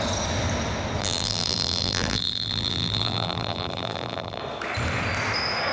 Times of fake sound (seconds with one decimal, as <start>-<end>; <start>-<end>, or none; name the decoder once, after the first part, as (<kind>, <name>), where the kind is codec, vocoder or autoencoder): 1.0-4.4 (vocoder, BigVGAN v2)